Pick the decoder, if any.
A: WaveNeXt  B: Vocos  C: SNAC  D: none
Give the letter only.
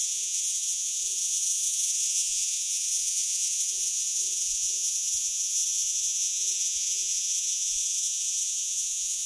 B